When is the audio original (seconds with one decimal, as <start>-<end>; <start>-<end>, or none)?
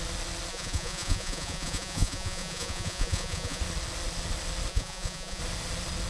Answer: 0.0-0.5; 3.6-4.7; 5.4-6.1